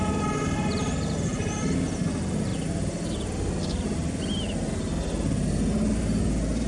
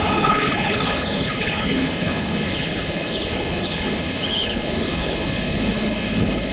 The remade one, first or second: second